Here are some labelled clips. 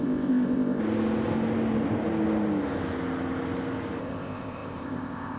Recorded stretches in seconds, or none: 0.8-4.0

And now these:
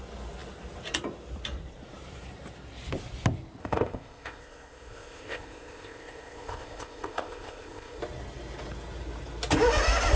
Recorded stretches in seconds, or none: 0.0-3.6; 8.0-10.2

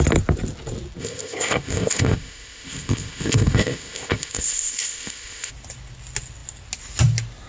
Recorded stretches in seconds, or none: 0.0-1.0; 5.5-7.5

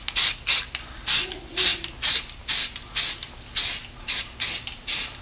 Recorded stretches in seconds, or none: 0.0-5.2

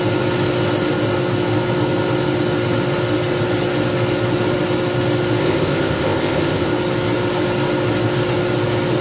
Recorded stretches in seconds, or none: 0.0-5.4; 6.7-9.0

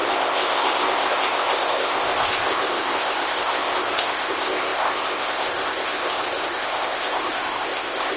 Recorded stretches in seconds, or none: none